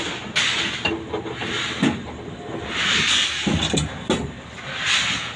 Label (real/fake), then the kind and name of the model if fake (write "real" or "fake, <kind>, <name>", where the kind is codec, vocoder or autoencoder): real